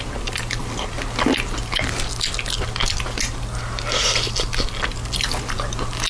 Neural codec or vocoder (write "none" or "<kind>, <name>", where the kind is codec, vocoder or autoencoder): none